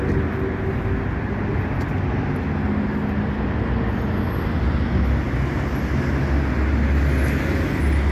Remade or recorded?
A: recorded